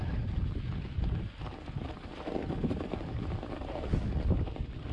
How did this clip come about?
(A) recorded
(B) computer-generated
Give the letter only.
A